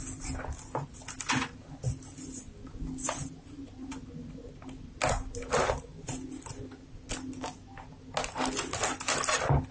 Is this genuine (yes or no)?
yes